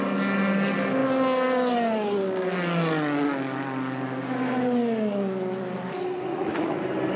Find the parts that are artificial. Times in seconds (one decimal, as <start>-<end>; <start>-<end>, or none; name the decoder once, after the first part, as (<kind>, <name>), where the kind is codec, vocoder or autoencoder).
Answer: 6.3-6.8 (vocoder, Vocos)